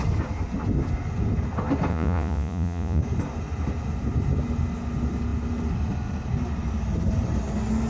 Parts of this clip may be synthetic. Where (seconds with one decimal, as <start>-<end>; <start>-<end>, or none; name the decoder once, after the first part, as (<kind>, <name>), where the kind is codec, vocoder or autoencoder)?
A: 1.9-3.0 (vocoder, Vocos)